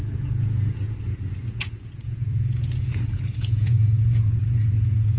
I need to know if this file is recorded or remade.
remade